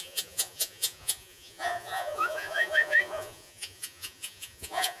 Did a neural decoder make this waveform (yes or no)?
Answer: yes